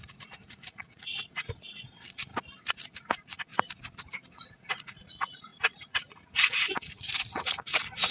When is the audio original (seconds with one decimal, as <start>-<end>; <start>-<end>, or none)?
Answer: 2.3-2.9; 3.5-4.3